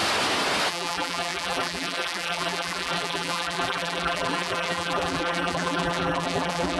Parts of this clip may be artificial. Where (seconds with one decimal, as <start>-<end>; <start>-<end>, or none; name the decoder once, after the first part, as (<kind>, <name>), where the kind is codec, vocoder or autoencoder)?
0.7-6.8 (vocoder, BigVGAN v2)